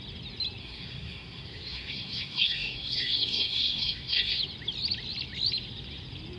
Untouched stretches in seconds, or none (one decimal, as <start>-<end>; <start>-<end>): 0.0-0.6; 4.4-6.4